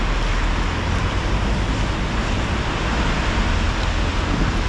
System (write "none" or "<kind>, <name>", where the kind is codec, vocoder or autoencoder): none